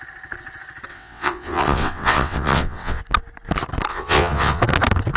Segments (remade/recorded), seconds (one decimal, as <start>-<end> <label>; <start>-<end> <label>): 0.0-0.9 recorded; 0.9-3.0 remade; 3.0-3.9 recorded; 3.9-4.6 remade; 4.6-5.2 recorded